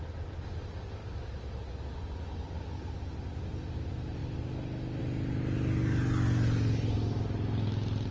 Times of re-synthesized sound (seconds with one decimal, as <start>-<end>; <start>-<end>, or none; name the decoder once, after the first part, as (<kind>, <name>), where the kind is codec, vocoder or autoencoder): none